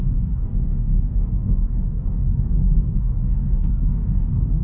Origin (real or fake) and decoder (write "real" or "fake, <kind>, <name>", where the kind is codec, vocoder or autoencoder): fake, codec, DAC